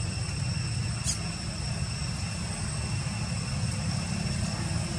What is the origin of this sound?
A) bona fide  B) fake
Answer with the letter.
A